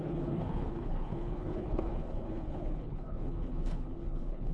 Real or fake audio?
fake